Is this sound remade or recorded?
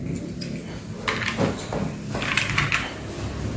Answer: recorded